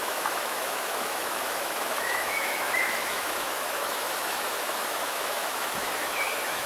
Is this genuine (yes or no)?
no